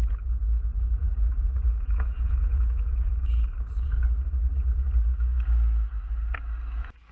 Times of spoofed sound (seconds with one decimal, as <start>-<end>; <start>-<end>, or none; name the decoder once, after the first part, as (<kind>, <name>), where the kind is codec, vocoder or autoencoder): 1.0-3.1 (vocoder, Vocos)